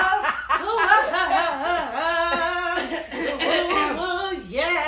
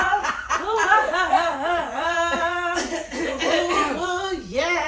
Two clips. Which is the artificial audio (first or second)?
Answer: second